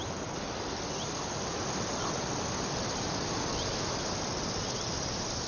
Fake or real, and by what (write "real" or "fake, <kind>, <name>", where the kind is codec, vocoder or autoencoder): real